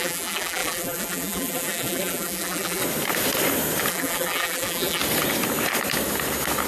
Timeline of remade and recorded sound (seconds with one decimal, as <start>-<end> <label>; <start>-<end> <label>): 0.0-2.8 remade; 2.8-3.9 recorded; 3.9-5.0 remade; 5.0-6.7 recorded